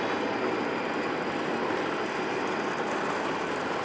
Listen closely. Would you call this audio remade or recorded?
recorded